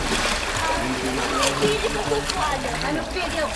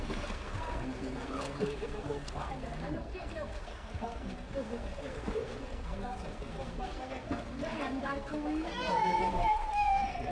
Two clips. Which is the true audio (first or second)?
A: first